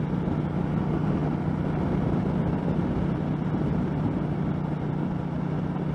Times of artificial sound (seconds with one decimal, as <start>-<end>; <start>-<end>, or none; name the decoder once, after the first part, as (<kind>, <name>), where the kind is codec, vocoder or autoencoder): none